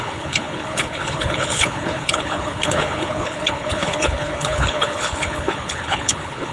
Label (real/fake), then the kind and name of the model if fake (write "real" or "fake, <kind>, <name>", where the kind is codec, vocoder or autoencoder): fake, codec, HILCodec